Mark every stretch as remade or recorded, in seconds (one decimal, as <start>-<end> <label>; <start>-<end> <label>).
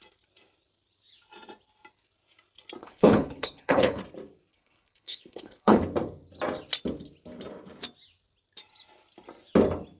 0.0-2.8 recorded; 2.8-4.0 remade; 4.0-4.5 recorded; 4.5-5.8 remade; 5.8-10.0 recorded